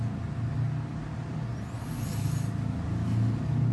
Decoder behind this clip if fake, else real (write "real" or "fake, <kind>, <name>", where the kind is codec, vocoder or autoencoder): real